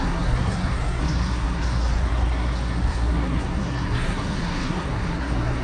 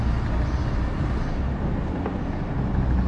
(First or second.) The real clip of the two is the second